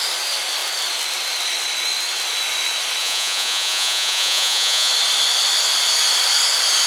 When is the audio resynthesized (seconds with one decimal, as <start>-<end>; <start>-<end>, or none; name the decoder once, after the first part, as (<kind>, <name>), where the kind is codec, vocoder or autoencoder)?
3.0-4.9 (vocoder, Vocos)